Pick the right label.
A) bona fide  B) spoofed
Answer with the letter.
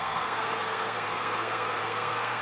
B